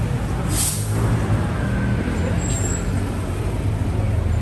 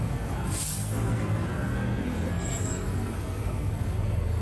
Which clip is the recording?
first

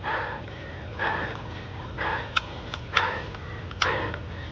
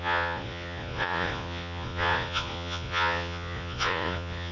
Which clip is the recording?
first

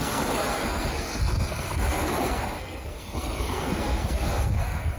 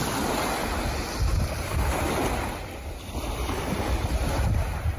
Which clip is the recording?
second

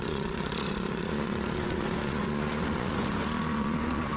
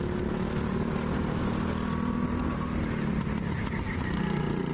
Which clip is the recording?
second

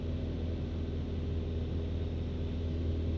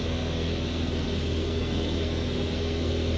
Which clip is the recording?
first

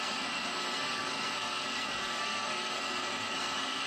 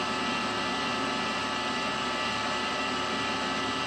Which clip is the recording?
second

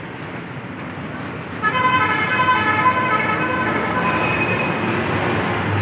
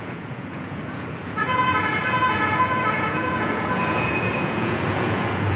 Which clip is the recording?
first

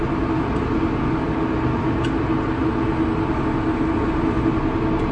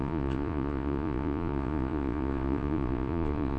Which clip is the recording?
first